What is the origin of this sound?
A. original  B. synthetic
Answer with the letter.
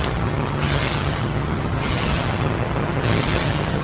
B